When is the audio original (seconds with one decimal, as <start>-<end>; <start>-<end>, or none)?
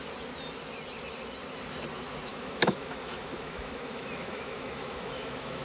0.0-2.3